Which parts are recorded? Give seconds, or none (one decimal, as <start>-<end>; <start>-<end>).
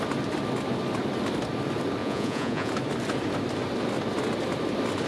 0.0-2.0; 2.7-5.1